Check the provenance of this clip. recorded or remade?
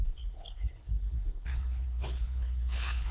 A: remade